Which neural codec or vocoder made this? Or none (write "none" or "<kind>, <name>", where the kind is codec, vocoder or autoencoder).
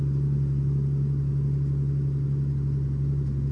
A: none